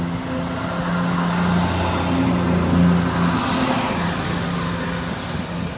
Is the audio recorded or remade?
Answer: recorded